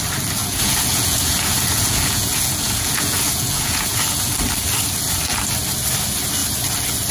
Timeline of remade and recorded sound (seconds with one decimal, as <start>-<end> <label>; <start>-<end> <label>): 0.0-0.4 recorded; 0.4-4.3 remade; 4.3-7.1 recorded

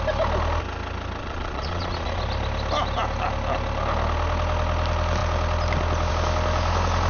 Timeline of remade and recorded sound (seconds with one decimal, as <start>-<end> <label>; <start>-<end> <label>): 0.0-1.2 recorded; 1.2-2.2 remade; 2.2-7.1 recorded

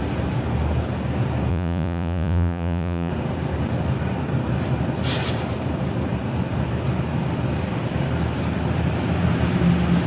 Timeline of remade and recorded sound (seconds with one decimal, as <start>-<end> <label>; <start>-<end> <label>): 0.0-1.5 recorded; 1.5-3.1 remade; 3.1-10.1 recorded

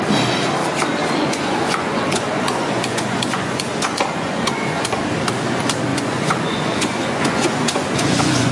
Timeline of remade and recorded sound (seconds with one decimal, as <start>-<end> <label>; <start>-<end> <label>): 0.0-1.2 recorded; 1.2-5.0 remade; 5.0-5.9 recorded; 5.9-8.5 remade

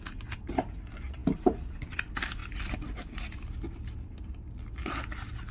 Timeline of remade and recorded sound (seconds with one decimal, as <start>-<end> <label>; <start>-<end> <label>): 0.0-5.5 recorded

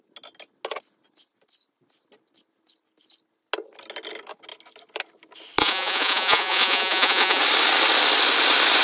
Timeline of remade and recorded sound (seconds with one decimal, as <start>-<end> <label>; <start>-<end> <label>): 0.0-5.6 recorded; 5.6-7.4 remade; 7.4-8.8 recorded

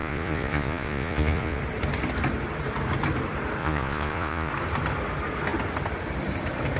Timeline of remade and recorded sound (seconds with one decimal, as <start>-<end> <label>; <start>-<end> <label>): 0.0-1.6 remade; 1.6-3.6 recorded; 3.6-4.5 remade; 4.5-6.8 recorded